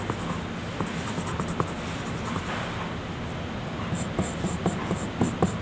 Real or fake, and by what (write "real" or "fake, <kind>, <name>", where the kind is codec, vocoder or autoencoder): real